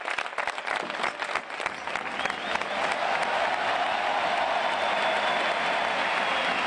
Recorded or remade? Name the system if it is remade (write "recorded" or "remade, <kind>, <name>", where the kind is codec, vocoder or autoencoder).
recorded